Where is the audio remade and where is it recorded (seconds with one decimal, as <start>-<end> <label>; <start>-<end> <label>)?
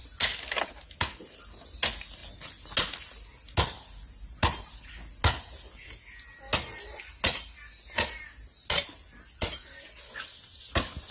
0.0-11.1 recorded